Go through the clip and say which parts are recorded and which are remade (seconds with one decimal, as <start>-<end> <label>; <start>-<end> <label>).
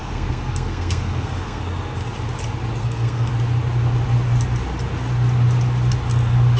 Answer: 0.0-1.6 remade; 1.6-2.8 recorded; 2.8-3.3 remade; 3.3-6.6 recorded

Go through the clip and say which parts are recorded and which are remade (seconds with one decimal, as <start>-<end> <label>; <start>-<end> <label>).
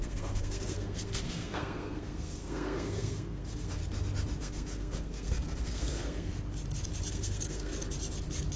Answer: 0.0-3.8 remade; 3.8-4.4 recorded; 4.4-6.3 remade; 6.3-7.1 recorded; 7.1-7.7 remade; 7.7-8.6 recorded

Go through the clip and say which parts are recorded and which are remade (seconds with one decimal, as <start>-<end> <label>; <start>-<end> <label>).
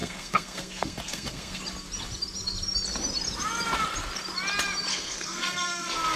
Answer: 0.0-1.6 remade; 1.6-4.9 recorded; 4.9-6.2 remade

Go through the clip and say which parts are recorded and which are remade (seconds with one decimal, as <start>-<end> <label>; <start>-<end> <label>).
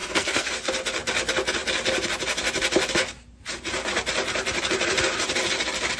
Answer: 0.0-0.5 remade; 0.5-6.0 recorded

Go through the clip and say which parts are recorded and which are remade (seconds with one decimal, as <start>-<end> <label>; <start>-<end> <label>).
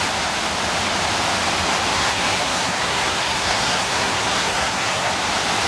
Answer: 0.0-1.9 recorded; 1.9-5.1 remade; 5.1-5.7 recorded